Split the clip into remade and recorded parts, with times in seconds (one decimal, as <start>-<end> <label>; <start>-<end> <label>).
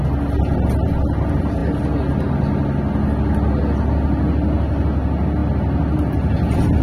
0.0-6.8 recorded